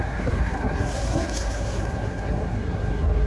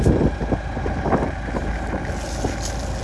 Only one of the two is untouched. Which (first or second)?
second